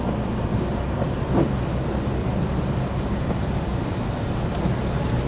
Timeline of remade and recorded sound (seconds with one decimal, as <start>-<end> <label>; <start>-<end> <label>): 0.0-0.5 recorded; 0.5-1.6 remade; 1.6-2.2 recorded; 2.2-4.0 remade; 4.0-5.3 recorded